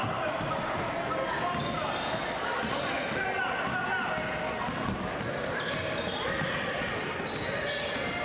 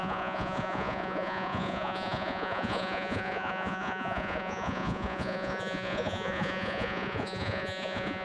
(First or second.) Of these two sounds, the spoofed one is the second